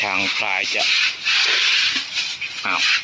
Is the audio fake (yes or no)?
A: no